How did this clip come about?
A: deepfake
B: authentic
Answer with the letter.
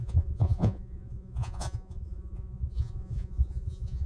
A